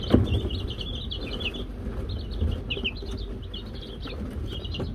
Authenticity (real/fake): real